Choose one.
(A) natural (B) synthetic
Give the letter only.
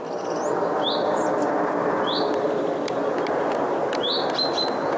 A